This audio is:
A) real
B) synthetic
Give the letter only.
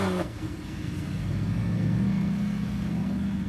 B